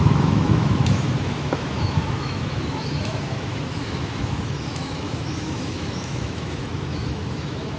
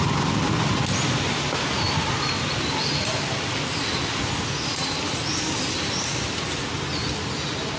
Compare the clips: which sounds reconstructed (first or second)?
first